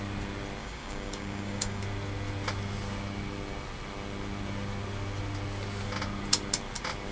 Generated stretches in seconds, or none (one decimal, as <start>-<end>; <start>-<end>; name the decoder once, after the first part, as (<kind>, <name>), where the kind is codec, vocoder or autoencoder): 0.6-1.8 (codec, DAC)